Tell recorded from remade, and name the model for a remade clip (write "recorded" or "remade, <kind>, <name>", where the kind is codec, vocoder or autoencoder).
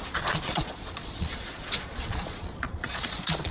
remade, vocoder, Vocos